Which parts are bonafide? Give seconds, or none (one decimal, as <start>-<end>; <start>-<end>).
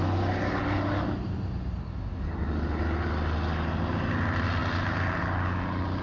0.0-6.0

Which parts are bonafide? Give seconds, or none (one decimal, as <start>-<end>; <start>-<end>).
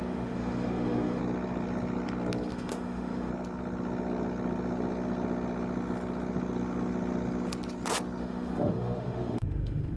1.2-2.5; 3.3-8.2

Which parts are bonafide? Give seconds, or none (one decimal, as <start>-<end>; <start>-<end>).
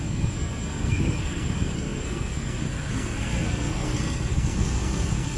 none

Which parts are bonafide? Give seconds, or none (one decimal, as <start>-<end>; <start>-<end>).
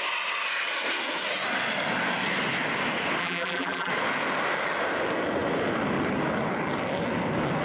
0.0-3.2; 3.9-7.6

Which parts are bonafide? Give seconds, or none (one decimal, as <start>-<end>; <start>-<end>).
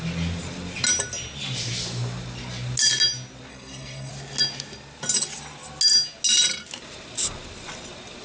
0.0-3.5; 4.1-8.2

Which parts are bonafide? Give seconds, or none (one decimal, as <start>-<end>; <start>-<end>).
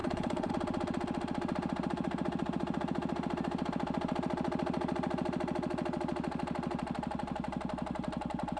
0.5-8.6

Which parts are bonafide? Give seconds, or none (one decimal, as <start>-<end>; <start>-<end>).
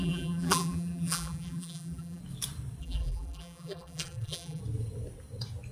2.2-2.8; 4.6-5.7